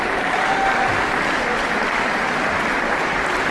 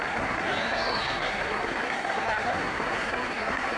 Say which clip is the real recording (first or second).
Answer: first